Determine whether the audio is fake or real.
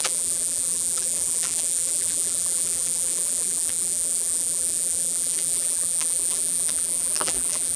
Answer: fake